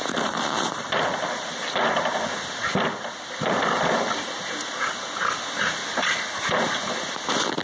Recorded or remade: recorded